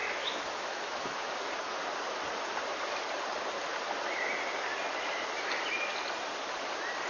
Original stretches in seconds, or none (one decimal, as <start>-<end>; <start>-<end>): 1.3-7.1